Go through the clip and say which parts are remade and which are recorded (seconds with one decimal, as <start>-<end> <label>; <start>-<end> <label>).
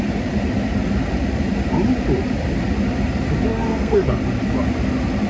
0.0-3.5 recorded; 3.5-4.2 remade; 4.2-5.3 recorded